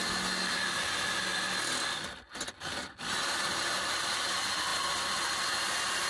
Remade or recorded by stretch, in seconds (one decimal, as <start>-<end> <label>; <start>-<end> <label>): 0.0-6.1 recorded